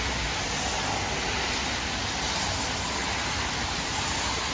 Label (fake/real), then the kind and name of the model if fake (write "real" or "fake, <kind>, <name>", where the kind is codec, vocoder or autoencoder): real